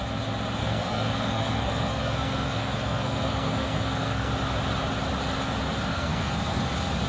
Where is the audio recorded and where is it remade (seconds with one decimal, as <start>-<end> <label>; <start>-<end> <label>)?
0.0-0.6 recorded; 0.6-4.3 remade; 4.3-5.9 recorded; 5.9-6.6 remade; 6.6-7.1 recorded